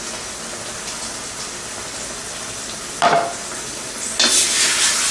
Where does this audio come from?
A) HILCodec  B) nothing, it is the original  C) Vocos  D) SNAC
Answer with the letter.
B